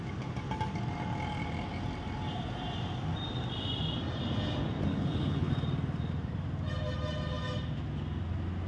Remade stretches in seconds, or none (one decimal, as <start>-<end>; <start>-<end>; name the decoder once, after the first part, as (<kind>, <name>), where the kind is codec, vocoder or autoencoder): 4.9-5.5 (codec, HILCodec)